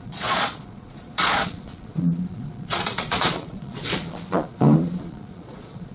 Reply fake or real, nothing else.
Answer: fake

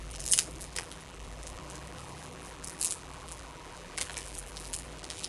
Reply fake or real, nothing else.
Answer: fake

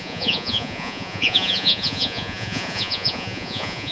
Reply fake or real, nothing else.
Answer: fake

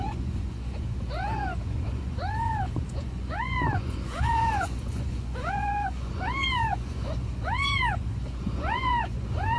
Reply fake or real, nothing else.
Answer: fake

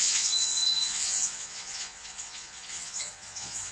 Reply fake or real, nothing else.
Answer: fake